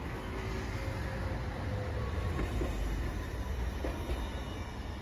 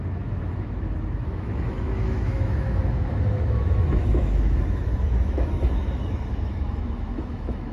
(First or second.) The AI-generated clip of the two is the second